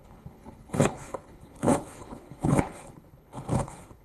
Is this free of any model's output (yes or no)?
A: no